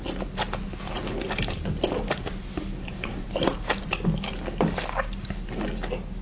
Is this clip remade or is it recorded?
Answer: recorded